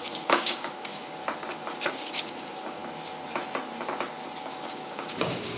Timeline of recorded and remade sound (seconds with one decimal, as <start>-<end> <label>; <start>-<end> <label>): 0.0-1.2 remade; 1.2-1.9 recorded; 1.9-2.8 remade; 2.8-4.4 recorded; 4.4-5.6 remade